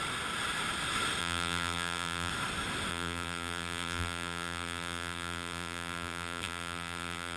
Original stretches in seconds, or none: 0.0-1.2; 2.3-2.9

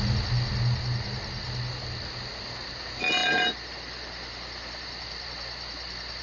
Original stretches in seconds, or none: 0.0-6.2

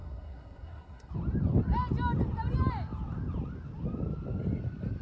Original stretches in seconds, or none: 1.1-5.0